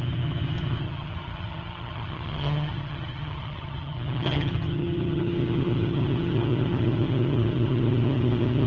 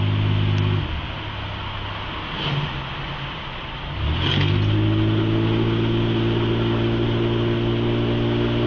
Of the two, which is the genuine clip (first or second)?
second